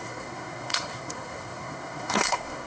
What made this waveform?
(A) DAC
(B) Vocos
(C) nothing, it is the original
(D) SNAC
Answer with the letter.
D